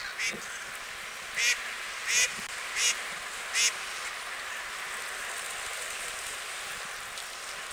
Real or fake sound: real